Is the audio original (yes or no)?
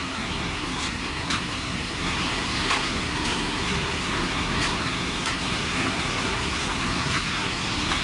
no